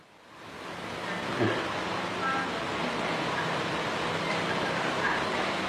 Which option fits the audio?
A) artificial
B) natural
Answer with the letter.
B